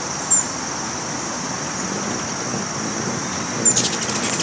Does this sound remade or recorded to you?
recorded